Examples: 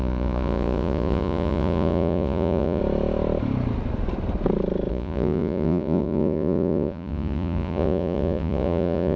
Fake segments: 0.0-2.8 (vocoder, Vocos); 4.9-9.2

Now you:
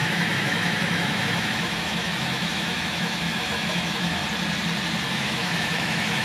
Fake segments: 0.0-4.2 (autoencoder, DAC-VAE); 5.1-6.2

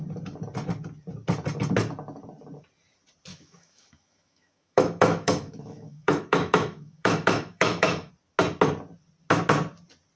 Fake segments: 3.3-8.1 (autoencoder, DAC-VAE)